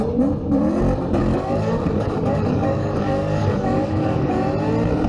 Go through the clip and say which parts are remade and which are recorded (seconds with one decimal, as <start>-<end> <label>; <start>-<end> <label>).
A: 0.0-1.2 recorded; 1.2-4.3 remade; 4.3-5.1 recorded